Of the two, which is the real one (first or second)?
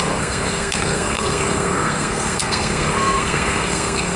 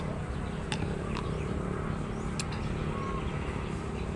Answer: second